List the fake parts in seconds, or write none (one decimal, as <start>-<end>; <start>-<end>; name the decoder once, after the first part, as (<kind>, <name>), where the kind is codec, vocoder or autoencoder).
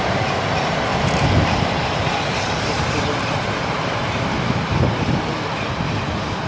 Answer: none